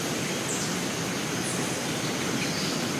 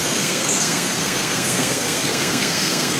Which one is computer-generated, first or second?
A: second